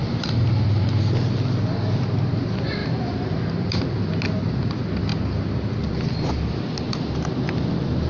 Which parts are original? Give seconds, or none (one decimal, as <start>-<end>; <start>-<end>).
0.9-2.8; 3.8-8.1